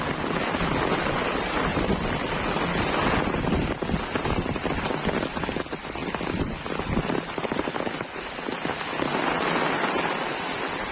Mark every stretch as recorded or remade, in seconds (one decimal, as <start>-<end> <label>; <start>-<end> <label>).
0.0-1.7 recorded; 1.7-2.4 remade; 2.4-10.9 recorded